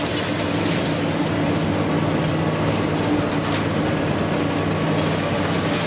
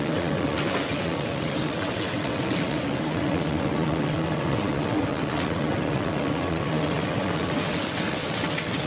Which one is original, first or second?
first